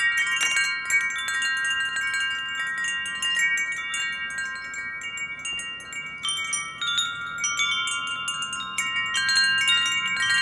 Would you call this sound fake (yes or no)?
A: no